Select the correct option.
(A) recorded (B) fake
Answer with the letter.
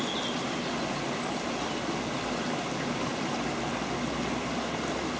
A